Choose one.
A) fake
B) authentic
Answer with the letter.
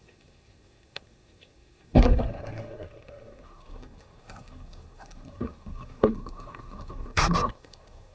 A